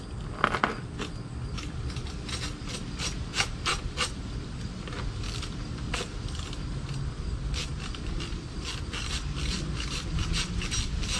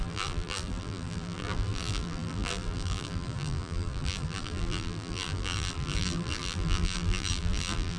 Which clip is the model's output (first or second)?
second